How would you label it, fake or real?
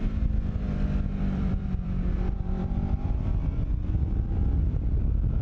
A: fake